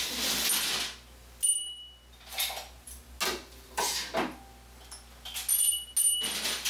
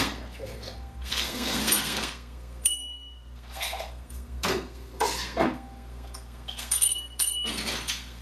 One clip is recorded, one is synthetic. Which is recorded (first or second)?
first